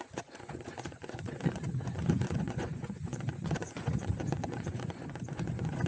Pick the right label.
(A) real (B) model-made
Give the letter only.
B